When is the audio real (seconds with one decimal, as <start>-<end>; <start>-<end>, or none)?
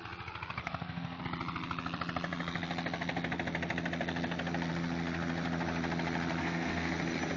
0.0-0.6; 1.2-6.4; 6.9-7.4